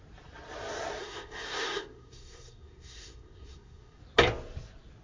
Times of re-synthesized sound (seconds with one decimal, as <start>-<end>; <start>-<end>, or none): 1.0-4.0